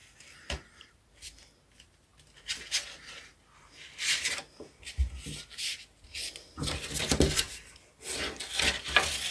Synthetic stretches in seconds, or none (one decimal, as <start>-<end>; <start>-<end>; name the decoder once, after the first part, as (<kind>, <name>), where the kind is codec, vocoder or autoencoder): none